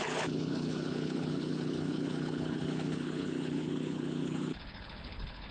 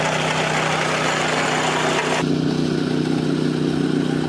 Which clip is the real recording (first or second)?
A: second